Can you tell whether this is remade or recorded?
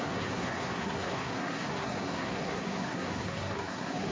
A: remade